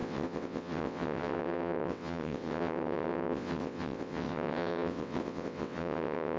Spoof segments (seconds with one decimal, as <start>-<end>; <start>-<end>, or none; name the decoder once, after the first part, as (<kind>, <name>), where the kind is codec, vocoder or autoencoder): 0.0-6.4 (vocoder, WaveNeXt)